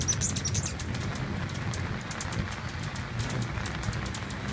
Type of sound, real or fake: real